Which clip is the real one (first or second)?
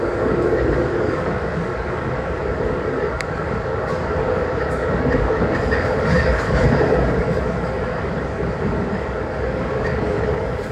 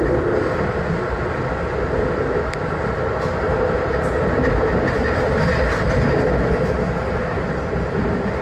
second